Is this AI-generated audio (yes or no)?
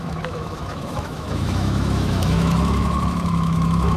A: yes